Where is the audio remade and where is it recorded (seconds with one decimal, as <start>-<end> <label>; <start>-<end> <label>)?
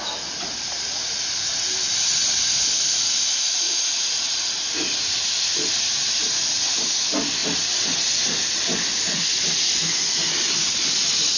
0.0-11.4 recorded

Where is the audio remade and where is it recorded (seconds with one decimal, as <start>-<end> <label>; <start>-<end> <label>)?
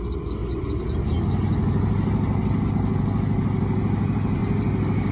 0.0-5.1 recorded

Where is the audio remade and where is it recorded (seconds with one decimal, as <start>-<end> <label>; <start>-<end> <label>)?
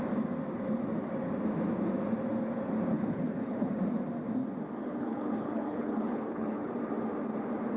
0.0-2.9 recorded; 2.9-3.7 remade; 3.7-4.8 recorded; 4.8-6.7 remade; 6.7-7.8 recorded